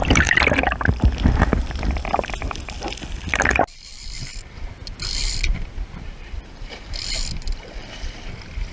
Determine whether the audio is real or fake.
fake